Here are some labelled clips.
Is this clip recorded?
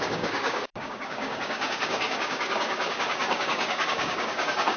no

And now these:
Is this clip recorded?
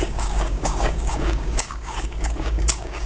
no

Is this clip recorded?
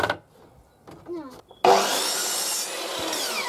yes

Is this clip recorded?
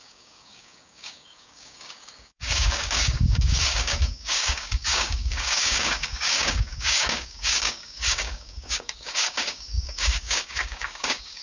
no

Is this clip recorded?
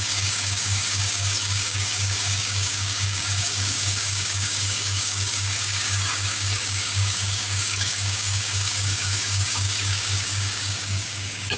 no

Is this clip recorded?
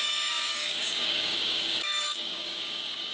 no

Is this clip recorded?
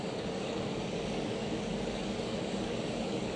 no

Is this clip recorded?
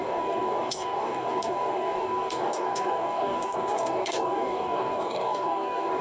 no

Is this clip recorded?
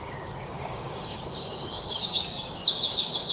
no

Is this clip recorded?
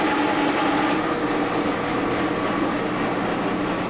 yes